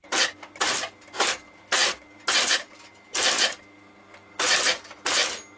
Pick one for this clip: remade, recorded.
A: recorded